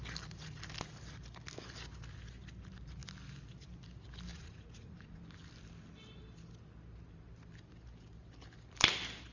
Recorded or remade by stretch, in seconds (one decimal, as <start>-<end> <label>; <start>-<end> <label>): 0.0-4.3 recorded; 4.3-5.2 remade; 5.2-9.3 recorded